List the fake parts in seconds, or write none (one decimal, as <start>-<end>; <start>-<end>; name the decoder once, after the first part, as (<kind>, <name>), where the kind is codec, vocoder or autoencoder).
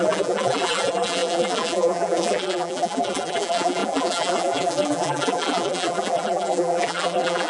0.0-7.5 (vocoder, BigVGAN v2)